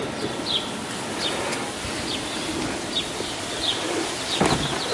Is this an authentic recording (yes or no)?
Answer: yes